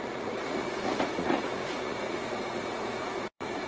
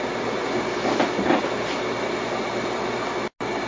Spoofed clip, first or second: first